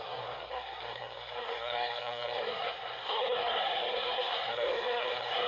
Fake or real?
fake